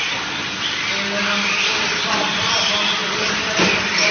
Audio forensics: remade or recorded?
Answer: recorded